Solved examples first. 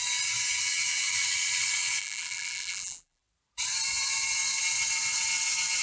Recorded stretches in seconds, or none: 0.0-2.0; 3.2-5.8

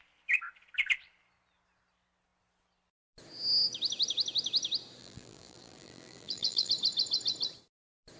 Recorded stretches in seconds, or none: 0.0-5.0; 6.7-8.2

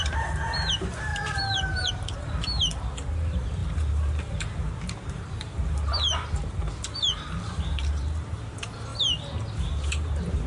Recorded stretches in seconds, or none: 1.1-1.9; 8.9-9.5

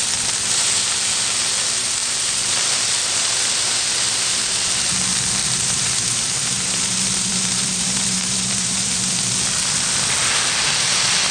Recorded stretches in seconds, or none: 0.0-2.0; 3.2-5.4; 9.2-11.3

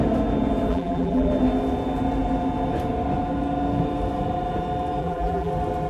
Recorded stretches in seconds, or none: 0.0-0.7; 1.3-5.0; 5.5-5.9

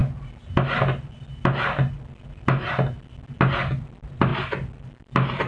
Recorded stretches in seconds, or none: 0.0-5.5